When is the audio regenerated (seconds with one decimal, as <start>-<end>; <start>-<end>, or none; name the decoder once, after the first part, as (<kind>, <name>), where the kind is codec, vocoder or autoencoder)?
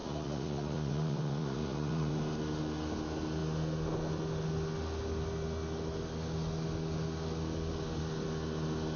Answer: 0.0-2.1 (vocoder, Vocos)